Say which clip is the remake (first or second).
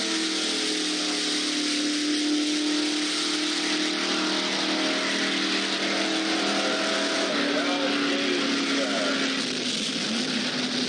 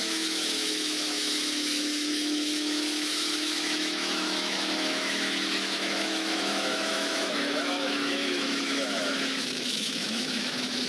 second